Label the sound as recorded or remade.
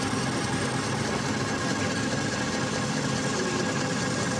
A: recorded